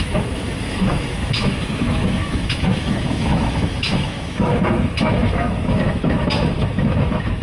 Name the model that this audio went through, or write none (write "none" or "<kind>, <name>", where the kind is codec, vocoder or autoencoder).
autoencoder, DAC-VAE